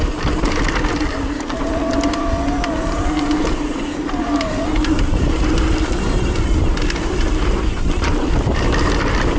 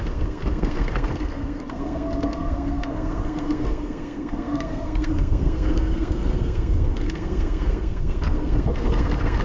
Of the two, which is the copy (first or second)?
second